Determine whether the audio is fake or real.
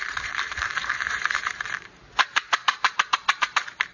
fake